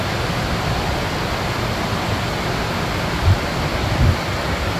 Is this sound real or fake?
real